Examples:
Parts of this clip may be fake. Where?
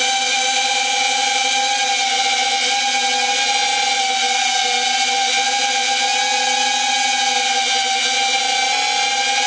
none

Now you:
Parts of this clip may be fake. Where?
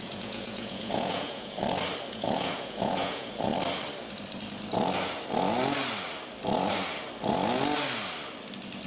0.0-1.6 (vocoder, Vocos); 2.1-3.5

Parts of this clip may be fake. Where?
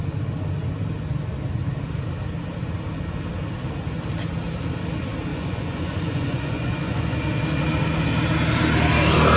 5.3-7.2 (vocoder, Vocos)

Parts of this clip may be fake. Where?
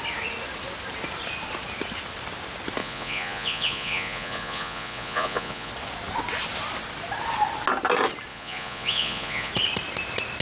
2.8-5.7 (vocoder, Vocos); 8.3-9.5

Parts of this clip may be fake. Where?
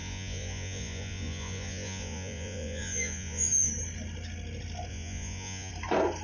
0.0-3.7 (vocoder, Vocos); 4.9-5.7